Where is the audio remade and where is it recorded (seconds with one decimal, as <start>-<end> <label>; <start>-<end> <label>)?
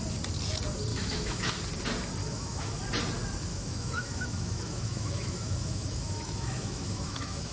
0.0-0.9 recorded; 0.9-1.5 remade; 1.5-2.2 recorded; 2.2-2.8 remade; 2.8-3.5 recorded; 3.5-7.5 remade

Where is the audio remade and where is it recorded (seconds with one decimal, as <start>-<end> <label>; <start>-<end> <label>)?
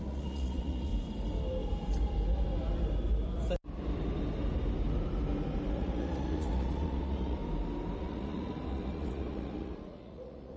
0.0-0.9 remade; 0.9-5.7 recorded; 5.7-7.4 remade; 7.4-8.0 recorded; 8.0-10.6 remade